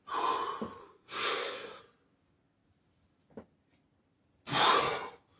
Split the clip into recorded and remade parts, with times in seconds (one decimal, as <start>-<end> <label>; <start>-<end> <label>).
0.0-0.8 recorded; 0.8-1.8 remade; 1.8-5.4 recorded